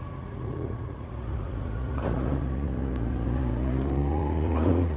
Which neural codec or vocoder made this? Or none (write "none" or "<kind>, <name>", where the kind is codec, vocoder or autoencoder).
vocoder, Vocos